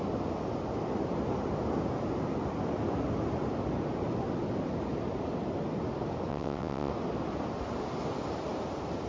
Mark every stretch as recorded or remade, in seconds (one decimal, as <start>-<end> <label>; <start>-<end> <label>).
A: 0.0-6.3 recorded; 6.3-6.9 remade; 6.9-9.1 recorded